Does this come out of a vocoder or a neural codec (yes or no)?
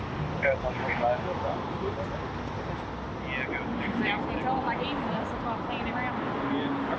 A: no